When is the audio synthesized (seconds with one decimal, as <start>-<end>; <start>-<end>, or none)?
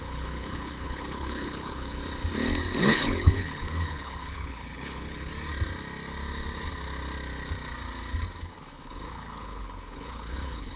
0.0-2.0; 2.8-5.3; 8.5-10.8